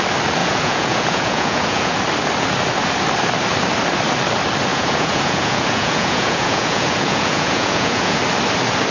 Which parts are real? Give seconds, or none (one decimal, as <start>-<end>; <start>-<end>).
0.0-0.4; 1.9-4.7; 8.2-8.9

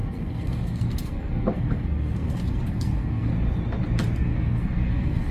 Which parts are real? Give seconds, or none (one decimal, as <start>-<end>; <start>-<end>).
3.3-4.2

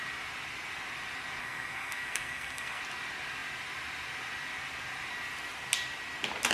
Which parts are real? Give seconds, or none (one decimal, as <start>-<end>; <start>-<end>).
0.0-1.4; 2.8-6.5